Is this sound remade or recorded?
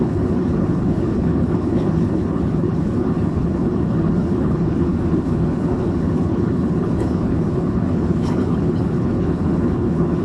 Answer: remade